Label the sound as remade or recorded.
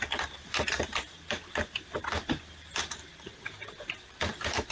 remade